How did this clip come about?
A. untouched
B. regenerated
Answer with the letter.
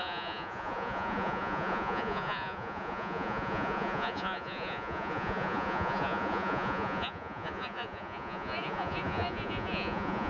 B